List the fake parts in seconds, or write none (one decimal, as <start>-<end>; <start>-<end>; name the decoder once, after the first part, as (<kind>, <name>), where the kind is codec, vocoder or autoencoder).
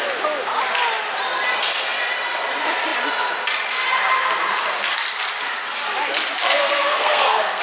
6.4-7.6 (codec, SNAC)